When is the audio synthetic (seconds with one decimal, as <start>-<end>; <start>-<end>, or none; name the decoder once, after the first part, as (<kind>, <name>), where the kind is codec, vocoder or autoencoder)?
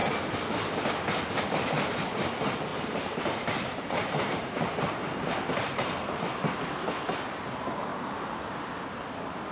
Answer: 2.7-4.5 (vocoder, BigVGAN v2); 7.9-8.7